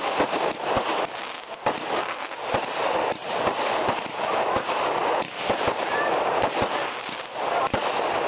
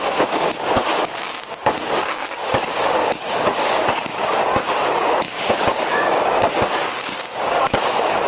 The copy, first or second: second